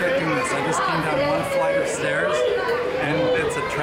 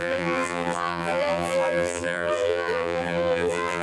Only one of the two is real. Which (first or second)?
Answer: first